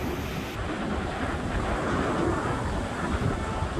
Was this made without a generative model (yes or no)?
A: yes